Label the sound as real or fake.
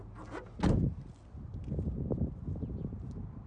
real